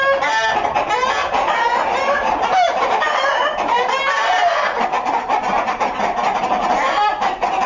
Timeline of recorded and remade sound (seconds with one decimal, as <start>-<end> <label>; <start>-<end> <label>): 0.0-1.2 recorded; 1.2-2.9 remade; 2.9-4.2 recorded; 4.2-6.0 remade; 6.0-7.7 recorded